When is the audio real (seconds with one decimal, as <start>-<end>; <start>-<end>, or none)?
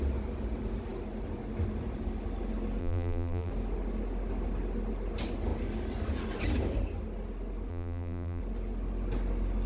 0.0-2.8; 3.5-7.7; 8.4-9.7